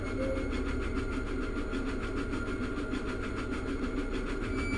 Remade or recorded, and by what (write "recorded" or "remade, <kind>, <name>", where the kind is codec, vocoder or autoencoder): recorded